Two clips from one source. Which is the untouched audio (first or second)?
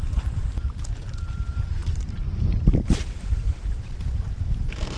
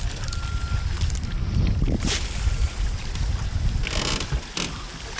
second